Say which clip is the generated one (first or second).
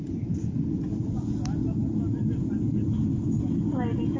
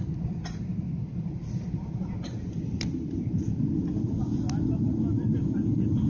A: second